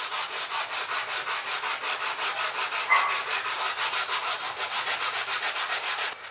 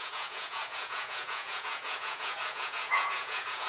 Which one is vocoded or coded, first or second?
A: second